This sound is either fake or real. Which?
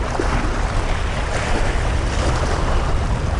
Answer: real